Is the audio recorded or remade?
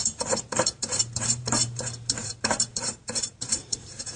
remade